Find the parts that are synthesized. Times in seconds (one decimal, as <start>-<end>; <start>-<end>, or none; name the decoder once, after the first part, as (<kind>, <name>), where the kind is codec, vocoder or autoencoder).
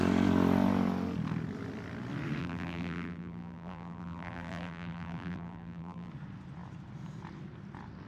2.4-6.1 (vocoder, BigVGAN v2)